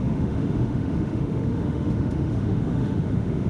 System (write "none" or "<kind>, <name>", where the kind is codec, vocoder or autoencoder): autoencoder, DAC-VAE